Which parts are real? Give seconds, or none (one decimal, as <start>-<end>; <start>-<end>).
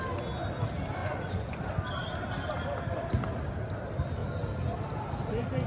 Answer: 0.0-1.0; 1.6-5.7